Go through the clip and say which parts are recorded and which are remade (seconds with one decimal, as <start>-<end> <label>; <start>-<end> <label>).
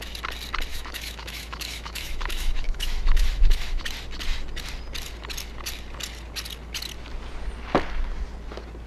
0.0-0.7 recorded; 0.7-3.8 remade; 3.8-8.9 recorded